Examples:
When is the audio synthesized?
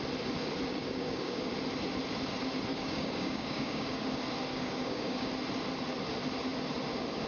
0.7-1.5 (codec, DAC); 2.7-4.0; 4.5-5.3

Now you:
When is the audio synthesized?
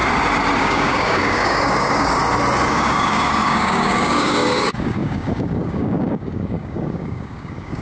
0.6-2.2 (codec, DAC); 2.7-7.8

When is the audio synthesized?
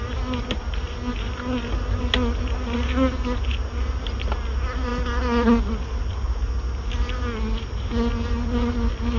none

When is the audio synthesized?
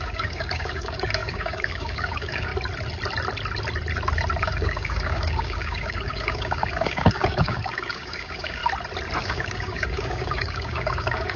0.0-2.5 (codec, DAC); 4.4-8.6; 9.2-11.4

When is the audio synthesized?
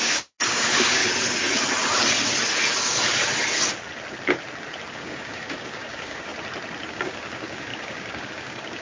0.0-1.0 (codec, DAC); 4.9-6.3; 6.9-8.8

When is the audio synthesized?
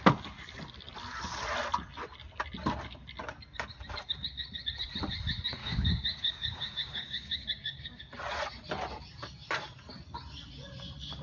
5.6-8.0 (codec, DAC)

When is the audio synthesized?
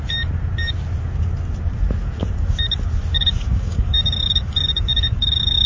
3.1-5.7 (codec, DAC)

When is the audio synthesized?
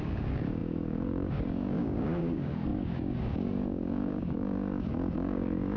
0.0-5.8 (codec, DAC)